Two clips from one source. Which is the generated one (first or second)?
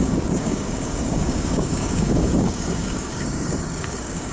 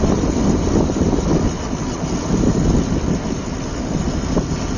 first